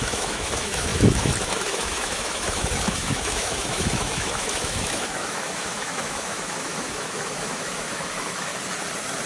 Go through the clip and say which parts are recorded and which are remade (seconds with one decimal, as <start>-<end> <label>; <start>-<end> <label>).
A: 0.0-8.5 remade; 8.5-9.3 recorded

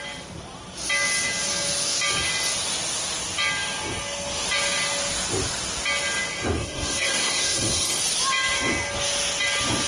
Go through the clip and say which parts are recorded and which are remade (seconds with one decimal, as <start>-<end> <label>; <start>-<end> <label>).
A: 0.0-6.6 recorded; 6.6-8.0 remade; 8.0-9.9 recorded

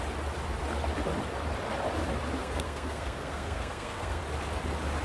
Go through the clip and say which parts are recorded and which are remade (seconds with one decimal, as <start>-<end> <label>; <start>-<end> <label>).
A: 0.0-2.4 recorded; 2.4-4.2 remade; 4.2-5.0 recorded

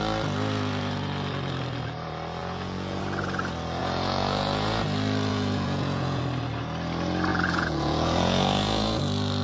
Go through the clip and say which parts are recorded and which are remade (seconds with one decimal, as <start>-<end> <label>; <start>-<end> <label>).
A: 0.0-2.4 recorded; 2.4-3.0 remade; 3.0-3.8 recorded; 3.8-4.8 remade; 4.8-5.3 recorded; 5.3-6.2 remade; 6.2-7.3 recorded; 7.3-9.0 remade; 9.0-9.4 recorded

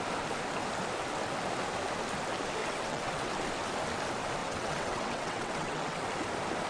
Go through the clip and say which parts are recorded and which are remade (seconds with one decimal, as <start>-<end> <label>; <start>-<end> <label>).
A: 0.0-2.6 recorded; 2.6-3.3 remade; 3.3-4.4 recorded; 4.4-6.0 remade; 6.0-6.7 recorded

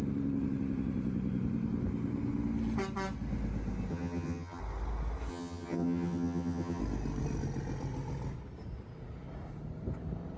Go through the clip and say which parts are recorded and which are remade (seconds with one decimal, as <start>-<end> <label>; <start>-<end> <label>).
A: 0.0-3.9 recorded; 3.9-4.6 remade; 4.6-5.3 recorded; 5.3-6.8 remade; 6.8-10.4 recorded

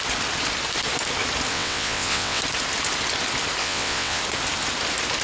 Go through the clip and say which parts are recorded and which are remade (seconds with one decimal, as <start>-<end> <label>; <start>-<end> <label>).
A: 0.0-1.5 recorded; 1.5-2.4 remade; 2.4-3.6 recorded; 3.6-4.2 remade; 4.2-5.2 recorded